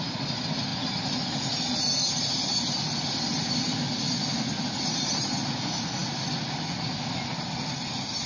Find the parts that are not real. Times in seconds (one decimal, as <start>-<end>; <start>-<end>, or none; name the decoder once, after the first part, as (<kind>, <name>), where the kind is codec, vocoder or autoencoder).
none